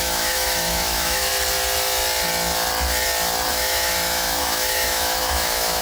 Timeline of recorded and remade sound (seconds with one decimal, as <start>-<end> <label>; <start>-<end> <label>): 0.0-1.3 remade; 1.3-3.5 recorded; 3.5-5.8 remade